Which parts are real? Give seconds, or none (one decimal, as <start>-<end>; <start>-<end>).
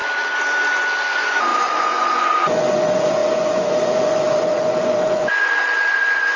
0.0-1.1